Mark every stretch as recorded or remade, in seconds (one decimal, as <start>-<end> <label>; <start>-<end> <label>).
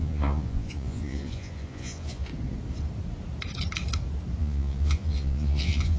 0.0-2.3 remade; 2.3-4.4 recorded; 4.4-6.0 remade